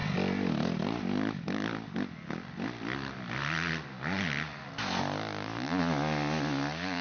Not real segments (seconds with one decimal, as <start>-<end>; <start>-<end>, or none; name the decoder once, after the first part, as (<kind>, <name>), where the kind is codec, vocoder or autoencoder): none